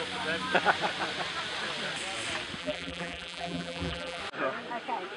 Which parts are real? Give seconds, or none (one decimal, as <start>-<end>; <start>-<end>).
0.0-2.6; 4.2-5.2